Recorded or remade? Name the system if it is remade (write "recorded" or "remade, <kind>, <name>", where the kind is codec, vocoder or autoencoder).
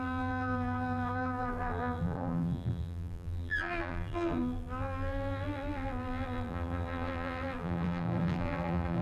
remade, vocoder, BigVGAN v2